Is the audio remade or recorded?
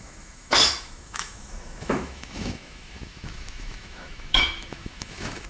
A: remade